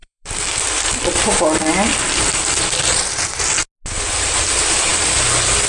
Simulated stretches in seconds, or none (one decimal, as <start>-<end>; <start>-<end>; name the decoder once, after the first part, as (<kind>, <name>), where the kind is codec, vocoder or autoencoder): 0.0-3.4 (vocoder, BigVGAN v2)